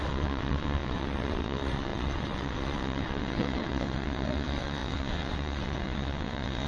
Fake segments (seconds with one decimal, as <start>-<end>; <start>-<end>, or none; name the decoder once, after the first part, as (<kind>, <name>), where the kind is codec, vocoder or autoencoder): 0.0-6.7 (vocoder, WaveNeXt)